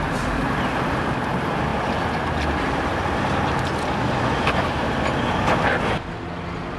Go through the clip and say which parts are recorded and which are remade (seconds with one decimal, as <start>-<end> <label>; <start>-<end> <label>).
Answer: 0.0-6.8 recorded